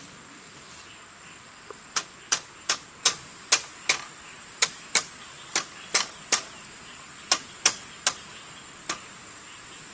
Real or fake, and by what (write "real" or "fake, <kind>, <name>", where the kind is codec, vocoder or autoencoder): real